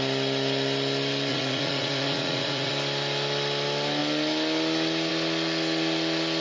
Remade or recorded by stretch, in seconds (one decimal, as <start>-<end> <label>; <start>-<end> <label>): 0.0-1.3 recorded; 1.3-2.7 remade; 2.7-6.4 recorded